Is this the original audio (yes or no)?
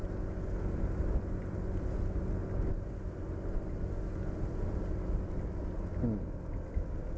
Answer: yes